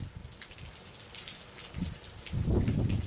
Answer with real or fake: real